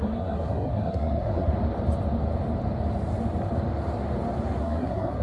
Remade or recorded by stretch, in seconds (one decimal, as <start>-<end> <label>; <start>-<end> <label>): 0.0-1.5 remade; 1.5-4.6 recorded; 4.6-5.2 remade